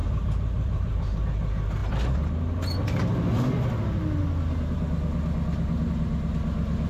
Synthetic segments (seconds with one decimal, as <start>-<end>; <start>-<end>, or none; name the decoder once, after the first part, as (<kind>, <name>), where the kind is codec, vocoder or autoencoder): 0.0-1.2 (vocoder, BigVGAN v2)